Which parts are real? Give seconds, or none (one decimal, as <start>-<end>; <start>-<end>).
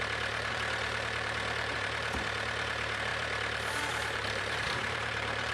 none